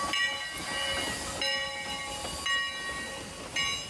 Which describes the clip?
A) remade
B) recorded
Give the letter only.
B